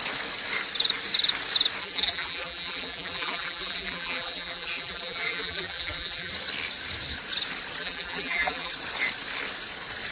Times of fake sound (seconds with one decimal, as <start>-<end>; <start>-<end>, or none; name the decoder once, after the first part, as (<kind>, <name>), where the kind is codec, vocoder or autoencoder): 1.8-6.3 (vocoder, BigVGAN v2); 7.8-8.7